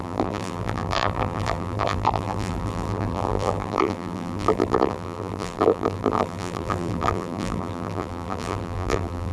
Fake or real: fake